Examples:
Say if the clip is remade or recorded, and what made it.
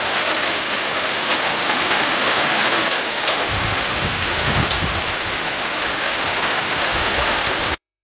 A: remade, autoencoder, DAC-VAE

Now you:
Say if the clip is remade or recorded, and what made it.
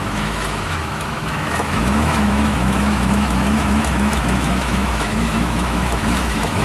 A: remade, autoencoder, DAC-VAE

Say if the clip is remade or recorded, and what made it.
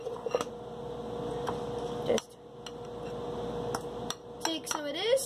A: recorded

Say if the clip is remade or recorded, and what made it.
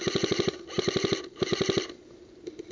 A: recorded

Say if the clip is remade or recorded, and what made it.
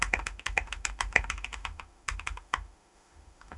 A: remade, autoencoder, DAC-VAE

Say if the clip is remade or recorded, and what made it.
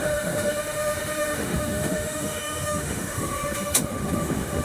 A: remade, autoencoder, DAC-VAE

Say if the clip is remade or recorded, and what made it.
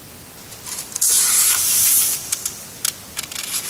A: recorded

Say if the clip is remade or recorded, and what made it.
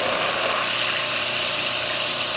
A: recorded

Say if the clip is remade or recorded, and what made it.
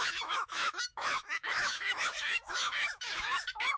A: remade, autoencoder, DAC-VAE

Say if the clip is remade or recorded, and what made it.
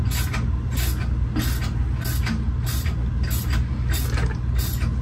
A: recorded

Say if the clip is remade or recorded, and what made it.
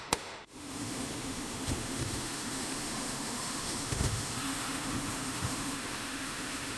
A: remade, autoencoder, DAC-VAE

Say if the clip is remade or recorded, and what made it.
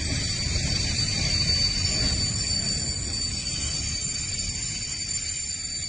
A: recorded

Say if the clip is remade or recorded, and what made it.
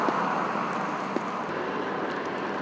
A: recorded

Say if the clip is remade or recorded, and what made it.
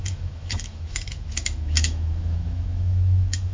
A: remade, autoencoder, DAC-VAE